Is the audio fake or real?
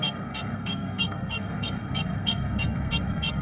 fake